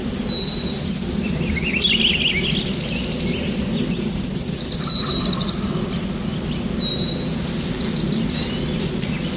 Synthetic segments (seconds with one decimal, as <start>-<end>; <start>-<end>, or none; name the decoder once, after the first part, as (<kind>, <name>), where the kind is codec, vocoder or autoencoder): none